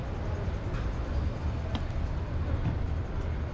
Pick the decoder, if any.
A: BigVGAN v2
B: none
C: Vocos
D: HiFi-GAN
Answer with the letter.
B